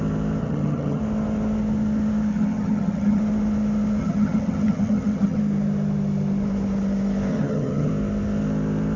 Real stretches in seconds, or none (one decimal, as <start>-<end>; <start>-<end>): 0.0-0.4; 1.0-2.3; 3.2-4.0; 5.4-7.3; 7.9-9.0